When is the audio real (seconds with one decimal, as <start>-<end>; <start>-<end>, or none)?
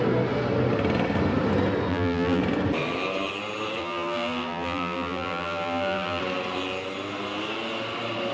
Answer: 0.0-1.9; 2.4-3.8; 6.2-8.3